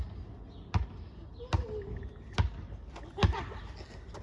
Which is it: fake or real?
real